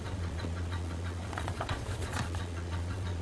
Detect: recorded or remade remade